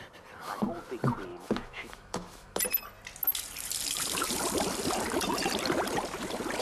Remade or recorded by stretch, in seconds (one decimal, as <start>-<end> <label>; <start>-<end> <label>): 0.0-1.3 recorded; 1.3-2.6 remade; 2.6-6.6 recorded